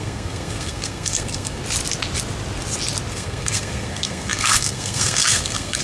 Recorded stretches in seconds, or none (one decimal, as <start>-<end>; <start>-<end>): 1.6-3.1